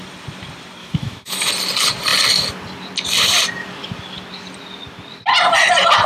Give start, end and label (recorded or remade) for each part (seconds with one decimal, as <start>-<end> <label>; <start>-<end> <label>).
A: 0.0-0.8 recorded; 0.8-1.5 remade; 1.5-6.1 recorded